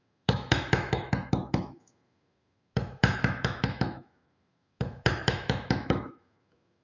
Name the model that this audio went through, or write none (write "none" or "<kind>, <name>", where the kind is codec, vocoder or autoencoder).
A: autoencoder, DAC-VAE